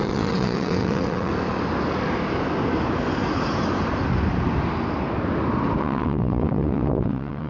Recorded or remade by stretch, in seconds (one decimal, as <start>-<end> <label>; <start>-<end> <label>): 0.0-1.3 remade; 1.3-5.8 recorded; 5.8-7.5 remade